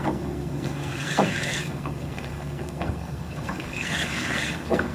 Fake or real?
fake